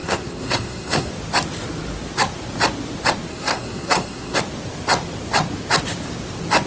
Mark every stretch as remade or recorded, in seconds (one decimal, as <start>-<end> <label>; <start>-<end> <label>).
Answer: 0.0-1.1 remade; 1.1-3.3 recorded; 3.3-4.4 remade; 4.4-6.7 recorded

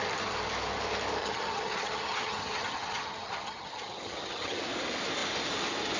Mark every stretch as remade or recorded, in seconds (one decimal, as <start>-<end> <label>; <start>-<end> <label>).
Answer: 0.0-1.2 recorded; 1.2-4.6 remade; 4.6-6.0 recorded

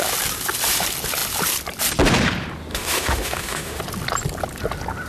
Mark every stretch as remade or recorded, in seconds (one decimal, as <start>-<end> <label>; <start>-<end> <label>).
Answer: 0.0-2.7 recorded; 2.7-3.8 remade; 3.8-5.1 recorded